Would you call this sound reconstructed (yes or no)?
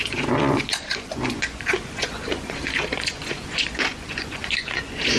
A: yes